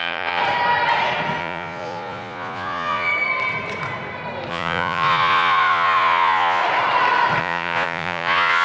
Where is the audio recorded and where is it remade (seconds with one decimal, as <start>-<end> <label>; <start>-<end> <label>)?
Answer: 0.0-0.4 remade; 0.4-1.4 recorded; 1.4-3.1 remade; 3.1-4.5 recorded; 4.5-6.6 remade; 6.6-7.4 recorded; 7.4-8.6 remade